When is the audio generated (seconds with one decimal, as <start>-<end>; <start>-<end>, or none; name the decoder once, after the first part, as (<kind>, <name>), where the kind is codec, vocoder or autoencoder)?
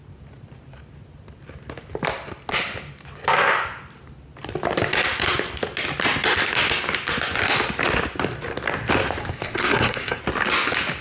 9.2-10.2 (codec, SNAC)